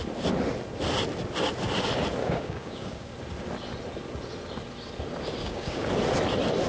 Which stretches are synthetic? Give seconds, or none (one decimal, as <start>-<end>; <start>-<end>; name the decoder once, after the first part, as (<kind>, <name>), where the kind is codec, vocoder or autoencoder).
2.2-3.1 (codec, DAC); 5.4-5.9